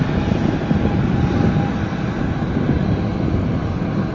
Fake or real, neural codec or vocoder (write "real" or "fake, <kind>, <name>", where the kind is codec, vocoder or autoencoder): real